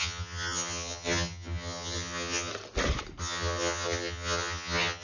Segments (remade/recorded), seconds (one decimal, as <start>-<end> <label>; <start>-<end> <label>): 0.0-2.5 remade; 2.5-3.2 recorded; 3.2-5.0 remade